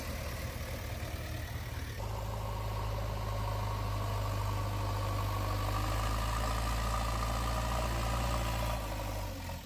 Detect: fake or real real